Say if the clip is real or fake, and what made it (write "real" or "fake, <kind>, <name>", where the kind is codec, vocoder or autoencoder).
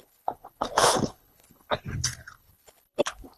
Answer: fake, codec, HILCodec